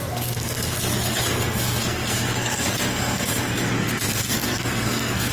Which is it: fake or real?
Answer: fake